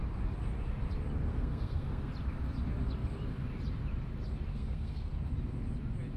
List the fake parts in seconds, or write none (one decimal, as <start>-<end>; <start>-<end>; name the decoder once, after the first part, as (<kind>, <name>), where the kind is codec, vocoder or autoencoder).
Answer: 1.3-2.1 (codec, SNAC); 4.5-5.1